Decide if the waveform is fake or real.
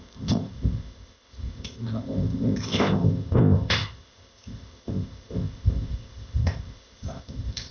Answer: fake